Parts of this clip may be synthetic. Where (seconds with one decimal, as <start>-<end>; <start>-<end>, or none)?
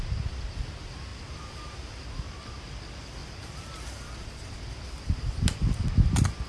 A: none